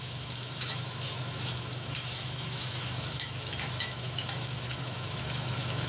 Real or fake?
fake